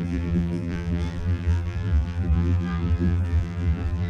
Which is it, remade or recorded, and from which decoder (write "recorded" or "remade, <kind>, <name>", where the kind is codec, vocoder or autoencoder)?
remade, vocoder, BigVGAN v2